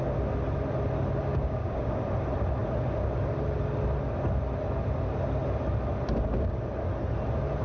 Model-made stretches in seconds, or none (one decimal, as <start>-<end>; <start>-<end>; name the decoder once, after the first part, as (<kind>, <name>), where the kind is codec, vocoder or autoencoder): 1.3-1.9 (codec, DAC)